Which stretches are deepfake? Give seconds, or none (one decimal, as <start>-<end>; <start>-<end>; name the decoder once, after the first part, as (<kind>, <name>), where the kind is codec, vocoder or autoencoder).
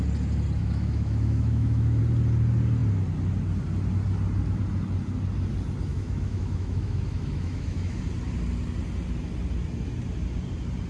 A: 0.6-2.0 (autoencoder, DAC-VAE); 5.9-8.0